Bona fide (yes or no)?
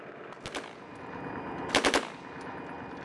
yes